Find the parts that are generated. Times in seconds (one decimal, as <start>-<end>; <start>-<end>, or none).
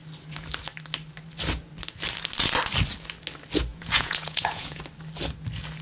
3.7-4.8